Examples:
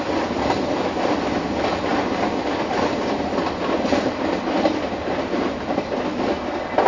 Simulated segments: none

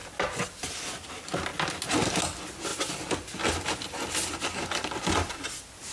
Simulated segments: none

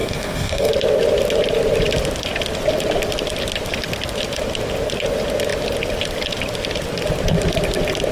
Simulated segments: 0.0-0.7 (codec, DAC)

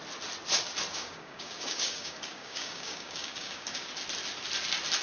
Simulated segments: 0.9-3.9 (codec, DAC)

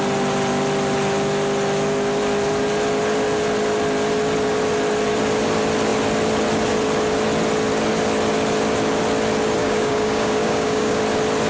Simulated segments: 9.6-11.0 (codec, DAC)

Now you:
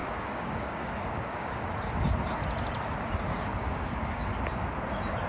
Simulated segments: 0.0-1.6 (codec, DAC); 3.5-4.2

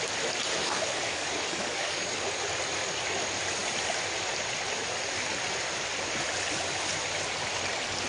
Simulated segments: 0.6-2.2 (codec, DAC)

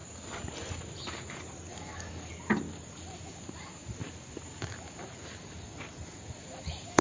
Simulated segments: 1.7-2.3 (codec, DAC)